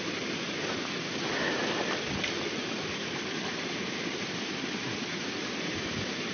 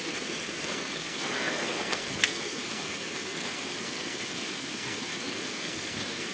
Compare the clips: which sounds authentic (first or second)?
first